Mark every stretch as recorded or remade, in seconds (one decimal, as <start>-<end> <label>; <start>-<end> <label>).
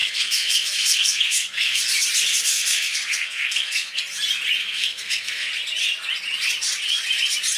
0.0-1.8 remade; 1.8-2.3 recorded; 2.3-4.0 remade; 4.0-4.6 recorded; 4.6-5.5 remade; 5.5-7.6 recorded